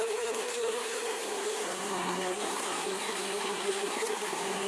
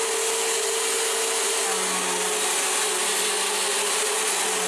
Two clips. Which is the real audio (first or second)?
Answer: second